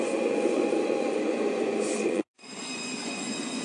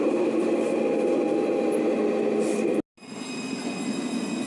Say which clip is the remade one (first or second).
first